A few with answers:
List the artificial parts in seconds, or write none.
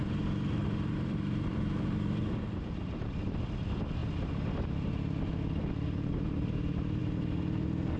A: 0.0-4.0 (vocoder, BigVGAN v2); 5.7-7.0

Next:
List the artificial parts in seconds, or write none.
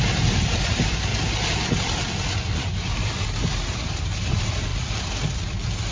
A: 0.0-1.1 (vocoder, BigVGAN v2); 2.6-4.7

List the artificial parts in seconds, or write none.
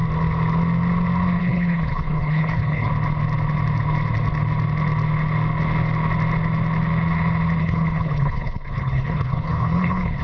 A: 1.4-2.9 (codec, HILCodec); 7.6-10.2